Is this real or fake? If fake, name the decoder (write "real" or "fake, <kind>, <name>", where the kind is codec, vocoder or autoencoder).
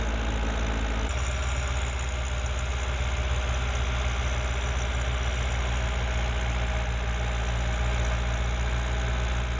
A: real